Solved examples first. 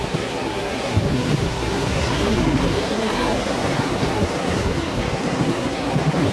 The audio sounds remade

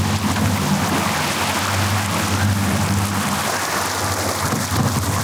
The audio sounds recorded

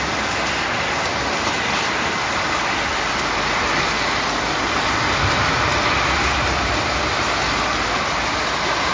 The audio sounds recorded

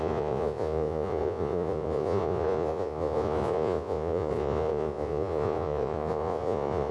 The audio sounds remade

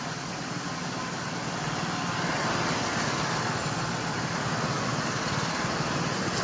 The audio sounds recorded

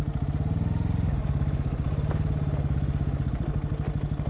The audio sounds recorded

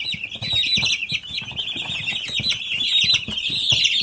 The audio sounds recorded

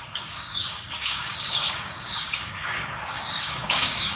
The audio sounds remade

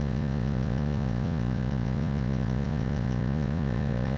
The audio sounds remade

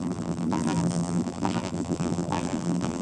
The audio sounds remade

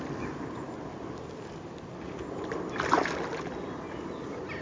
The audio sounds recorded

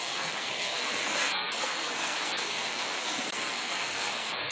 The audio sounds remade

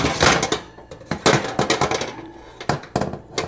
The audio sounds recorded